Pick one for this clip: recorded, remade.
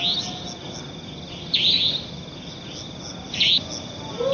recorded